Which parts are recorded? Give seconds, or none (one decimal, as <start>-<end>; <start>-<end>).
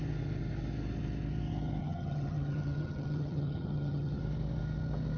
0.0-1.8; 4.2-5.2